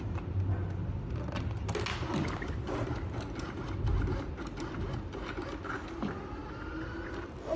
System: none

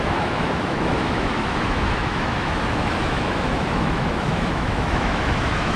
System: autoencoder, DAC-VAE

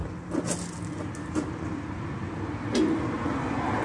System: none